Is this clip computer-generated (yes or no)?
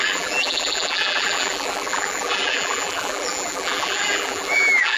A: yes